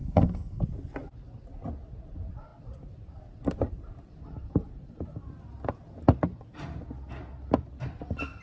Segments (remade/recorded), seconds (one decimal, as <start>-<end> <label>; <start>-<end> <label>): 0.0-0.6 remade; 0.6-8.4 recorded

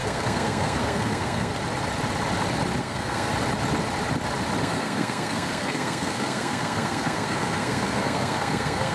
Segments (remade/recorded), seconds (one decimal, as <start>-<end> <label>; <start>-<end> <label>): 0.0-1.5 remade; 1.5-2.8 recorded; 2.8-3.3 remade; 3.3-4.6 recorded; 4.6-8.9 remade

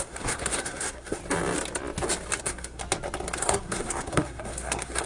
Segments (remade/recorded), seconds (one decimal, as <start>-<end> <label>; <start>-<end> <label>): 0.0-1.2 remade; 1.2-2.4 recorded; 2.4-2.8 remade; 2.8-3.4 recorded; 3.4-5.1 remade